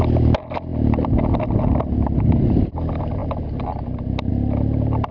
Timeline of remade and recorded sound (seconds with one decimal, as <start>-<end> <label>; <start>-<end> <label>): 0.0-5.1 recorded